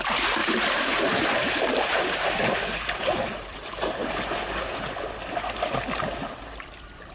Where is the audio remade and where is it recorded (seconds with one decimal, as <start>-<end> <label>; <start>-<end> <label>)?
0.0-0.4 recorded; 0.4-4.7 remade; 4.7-7.1 recorded